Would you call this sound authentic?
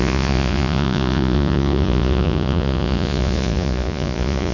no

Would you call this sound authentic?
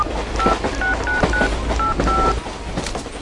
yes